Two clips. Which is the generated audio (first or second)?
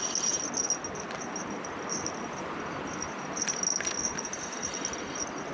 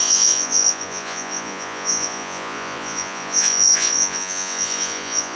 second